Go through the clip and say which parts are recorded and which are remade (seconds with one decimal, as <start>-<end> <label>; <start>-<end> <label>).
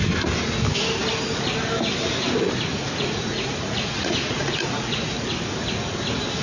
0.0-2.7 recorded; 2.7-5.3 remade; 5.3-6.4 recorded